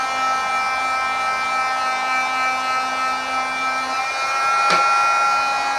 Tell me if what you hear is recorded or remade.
recorded